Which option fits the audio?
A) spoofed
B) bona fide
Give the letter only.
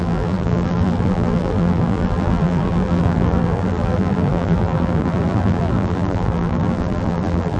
A